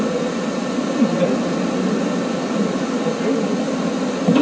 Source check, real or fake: real